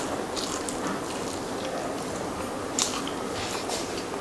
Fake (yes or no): no